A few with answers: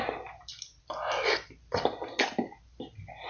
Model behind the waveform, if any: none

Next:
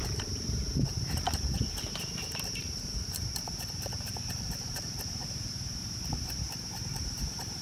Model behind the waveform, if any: vocoder, BigVGAN v2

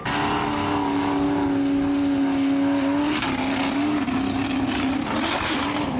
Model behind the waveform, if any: none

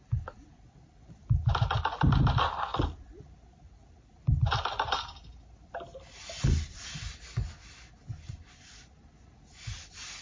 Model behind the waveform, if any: none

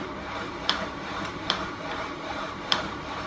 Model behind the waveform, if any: vocoder, BigVGAN v2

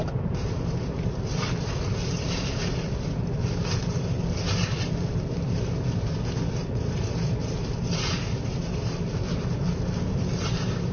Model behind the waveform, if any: vocoder, BigVGAN v2